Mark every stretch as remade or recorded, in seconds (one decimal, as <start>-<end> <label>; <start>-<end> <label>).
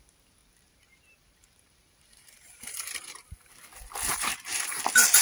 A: 0.0-0.4 recorded; 0.4-3.5 remade; 3.5-4.1 recorded; 4.1-4.8 remade; 4.8-5.2 recorded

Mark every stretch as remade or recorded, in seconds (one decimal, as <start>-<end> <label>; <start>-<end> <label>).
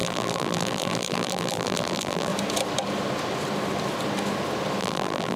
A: 0.0-2.3 remade; 2.3-4.8 recorded; 4.8-5.4 remade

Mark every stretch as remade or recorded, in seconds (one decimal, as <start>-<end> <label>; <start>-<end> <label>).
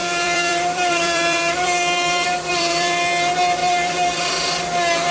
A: 0.0-3.1 remade; 3.1-3.6 recorded; 3.6-4.3 remade; 4.3-5.1 recorded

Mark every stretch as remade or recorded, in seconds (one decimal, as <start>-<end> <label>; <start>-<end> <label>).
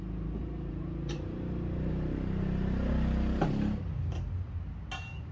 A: 0.0-0.4 recorded; 0.4-2.9 remade; 2.9-5.3 recorded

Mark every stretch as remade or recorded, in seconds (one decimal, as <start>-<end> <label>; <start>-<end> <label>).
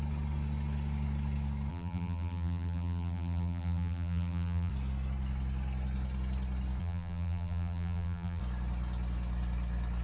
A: 0.0-1.7 recorded; 1.7-4.7 remade; 4.7-6.8 recorded; 6.8-8.4 remade; 8.4-10.0 recorded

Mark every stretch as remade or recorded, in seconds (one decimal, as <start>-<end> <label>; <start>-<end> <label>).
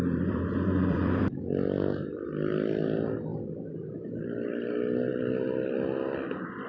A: 0.0-6.7 remade